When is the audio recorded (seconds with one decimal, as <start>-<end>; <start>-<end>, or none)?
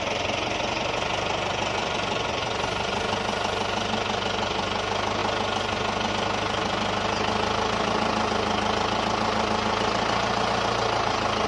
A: 0.0-11.5